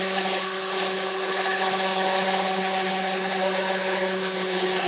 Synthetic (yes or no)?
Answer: yes